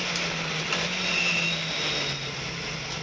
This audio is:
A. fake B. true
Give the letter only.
B